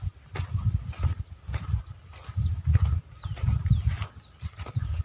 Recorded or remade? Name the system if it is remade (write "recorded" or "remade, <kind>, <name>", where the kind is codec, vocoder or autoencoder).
recorded